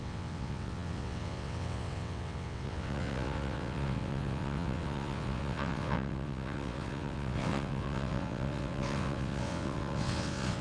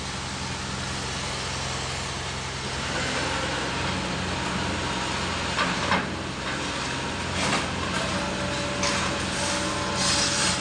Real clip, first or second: second